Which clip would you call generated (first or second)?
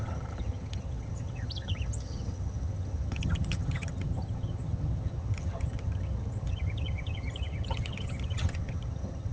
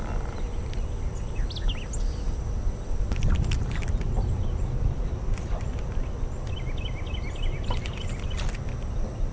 first